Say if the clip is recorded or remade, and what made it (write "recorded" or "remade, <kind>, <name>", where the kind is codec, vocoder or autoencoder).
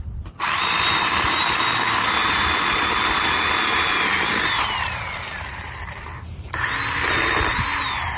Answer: recorded